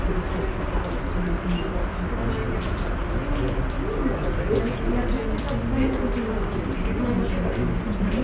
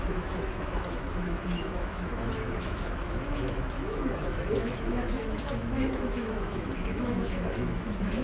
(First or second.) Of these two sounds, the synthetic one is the second